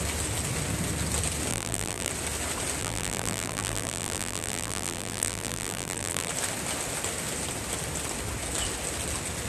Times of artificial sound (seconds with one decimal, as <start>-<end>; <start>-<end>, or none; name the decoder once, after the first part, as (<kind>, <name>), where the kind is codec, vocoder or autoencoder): 1.5-2.1 (vocoder, BigVGAN v2); 2.8-6.3